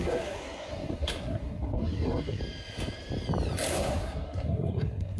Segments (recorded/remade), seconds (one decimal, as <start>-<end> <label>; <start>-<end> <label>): 0.0-2.4 remade; 2.4-3.7 recorded; 3.7-5.2 remade